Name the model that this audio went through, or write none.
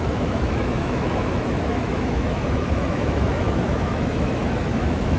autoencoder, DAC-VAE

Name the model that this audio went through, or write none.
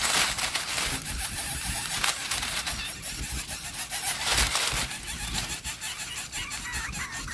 none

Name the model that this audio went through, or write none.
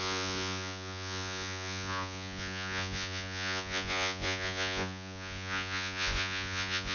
vocoder, Vocos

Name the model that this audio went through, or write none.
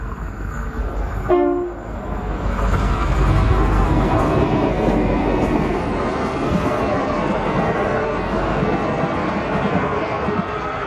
codec, SNAC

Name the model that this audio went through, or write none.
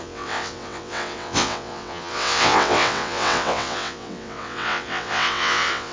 vocoder, WaveNeXt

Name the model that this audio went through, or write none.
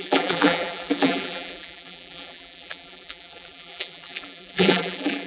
vocoder, BigVGAN v2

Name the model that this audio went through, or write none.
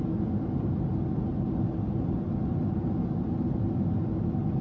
none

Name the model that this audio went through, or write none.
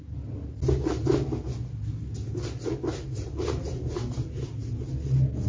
none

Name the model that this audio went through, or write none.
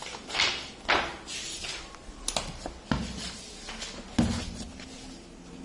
none